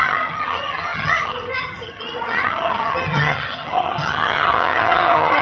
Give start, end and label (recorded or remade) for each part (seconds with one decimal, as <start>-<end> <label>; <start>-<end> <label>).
0.0-5.4 remade